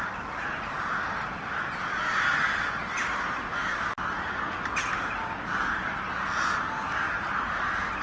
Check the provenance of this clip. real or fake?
real